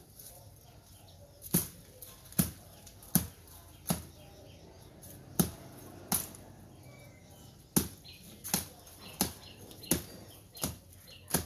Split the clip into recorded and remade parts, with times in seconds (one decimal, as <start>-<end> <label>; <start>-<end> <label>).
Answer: 0.0-11.5 recorded